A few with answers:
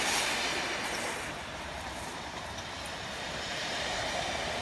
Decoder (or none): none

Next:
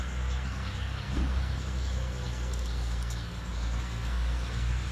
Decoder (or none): codec, SNAC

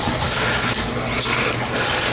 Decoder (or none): none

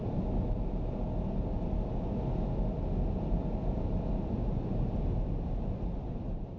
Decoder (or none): none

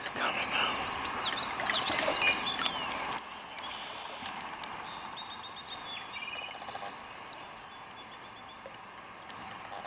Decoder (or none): none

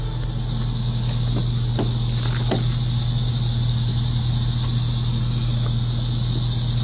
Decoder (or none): none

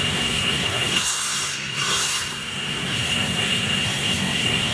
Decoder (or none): codec, SNAC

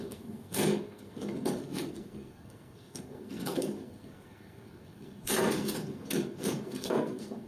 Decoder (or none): codec, SNAC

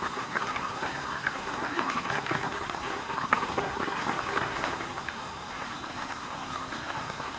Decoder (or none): codec, SNAC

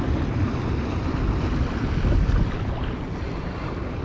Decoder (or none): none